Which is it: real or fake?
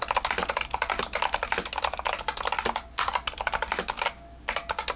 real